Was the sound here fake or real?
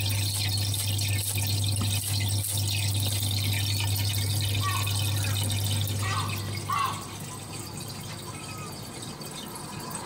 real